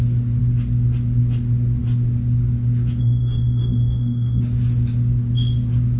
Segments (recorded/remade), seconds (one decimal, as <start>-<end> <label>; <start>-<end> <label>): 0.0-3.0 recorded; 3.0-4.4 remade; 4.4-6.0 recorded